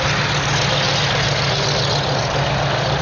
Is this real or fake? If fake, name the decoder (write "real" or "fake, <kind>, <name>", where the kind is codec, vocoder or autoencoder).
real